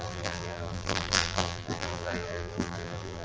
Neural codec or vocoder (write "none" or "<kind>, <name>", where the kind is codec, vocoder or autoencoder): vocoder, BigVGAN v2